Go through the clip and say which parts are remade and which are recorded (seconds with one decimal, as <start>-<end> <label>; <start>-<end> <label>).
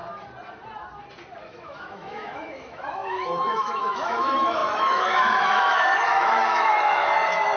0.0-1.4 recorded; 1.4-7.6 remade